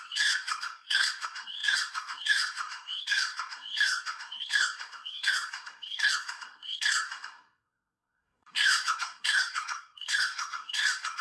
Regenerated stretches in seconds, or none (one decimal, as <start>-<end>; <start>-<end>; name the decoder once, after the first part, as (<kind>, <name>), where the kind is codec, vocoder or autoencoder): 0.0-11.2 (codec, SNAC)